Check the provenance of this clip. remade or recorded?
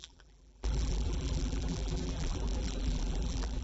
remade